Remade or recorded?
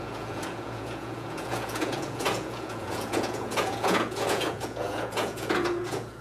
remade